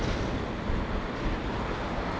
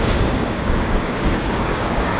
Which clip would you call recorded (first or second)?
first